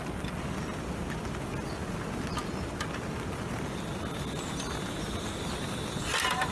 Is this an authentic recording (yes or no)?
yes